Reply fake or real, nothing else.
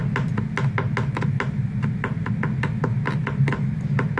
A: real